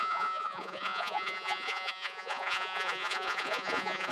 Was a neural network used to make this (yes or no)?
yes